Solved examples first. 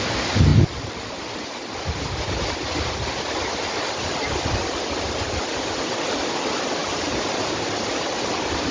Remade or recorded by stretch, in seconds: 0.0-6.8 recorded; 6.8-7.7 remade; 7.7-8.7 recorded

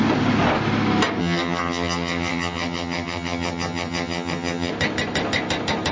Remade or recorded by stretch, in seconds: 0.0-1.2 recorded; 1.2-4.7 remade; 4.7-5.9 recorded